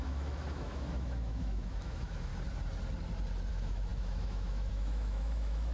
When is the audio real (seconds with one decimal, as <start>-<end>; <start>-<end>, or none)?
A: 2.3-3.5